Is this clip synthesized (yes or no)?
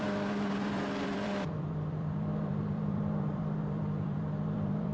yes